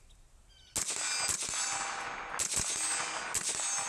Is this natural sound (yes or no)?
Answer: yes